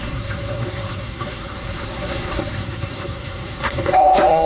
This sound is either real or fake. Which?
fake